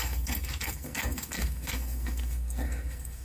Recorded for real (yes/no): no